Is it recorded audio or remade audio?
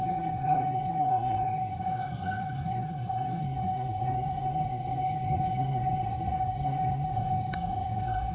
remade